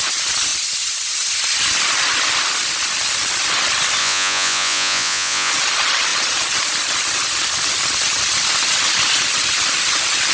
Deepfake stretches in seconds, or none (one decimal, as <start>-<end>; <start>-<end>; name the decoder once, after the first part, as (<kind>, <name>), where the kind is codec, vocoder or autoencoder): 4.0-5.5 (vocoder, Vocos)